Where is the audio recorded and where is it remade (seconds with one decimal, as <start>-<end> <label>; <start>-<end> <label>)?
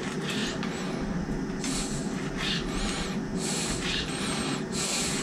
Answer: 0.0-0.4 remade; 0.4-3.5 recorded; 3.5-5.2 remade